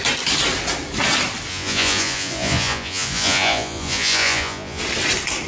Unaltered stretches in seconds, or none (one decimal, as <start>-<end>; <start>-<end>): 0.0-1.5; 4.8-5.5